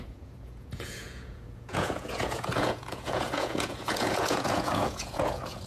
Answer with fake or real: fake